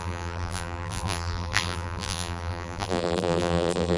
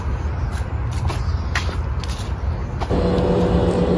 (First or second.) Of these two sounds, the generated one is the first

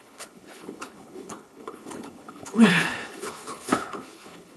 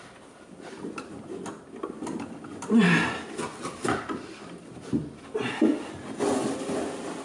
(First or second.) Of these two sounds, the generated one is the first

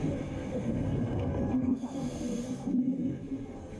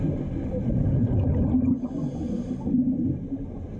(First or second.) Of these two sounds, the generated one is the first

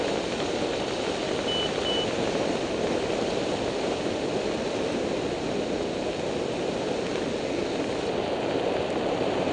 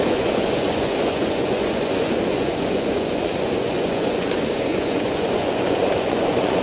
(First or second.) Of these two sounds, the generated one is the second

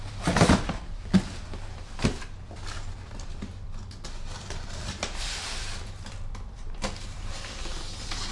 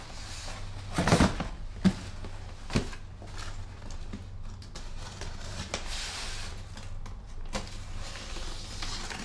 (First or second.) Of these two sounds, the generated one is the first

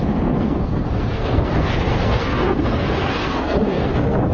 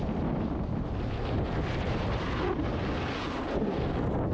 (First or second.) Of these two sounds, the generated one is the first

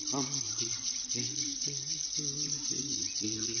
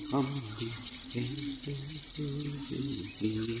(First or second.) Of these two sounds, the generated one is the first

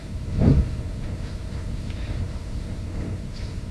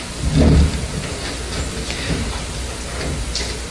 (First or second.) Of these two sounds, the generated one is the first